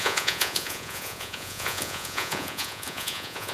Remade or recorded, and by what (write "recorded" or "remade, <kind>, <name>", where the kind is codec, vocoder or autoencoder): remade, vocoder, Vocos